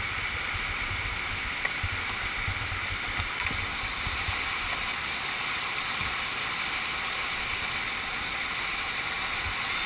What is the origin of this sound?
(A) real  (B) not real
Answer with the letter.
A